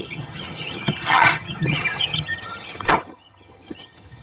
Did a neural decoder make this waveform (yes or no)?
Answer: yes